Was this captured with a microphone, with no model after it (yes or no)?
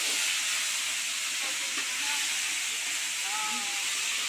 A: yes